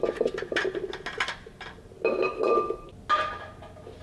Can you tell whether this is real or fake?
real